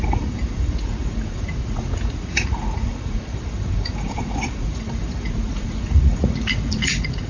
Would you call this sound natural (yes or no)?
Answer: no